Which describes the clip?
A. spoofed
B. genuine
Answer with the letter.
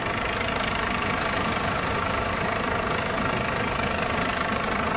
B